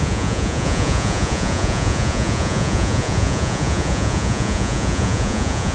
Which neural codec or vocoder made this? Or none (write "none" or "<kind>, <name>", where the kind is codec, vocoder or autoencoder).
vocoder, Vocos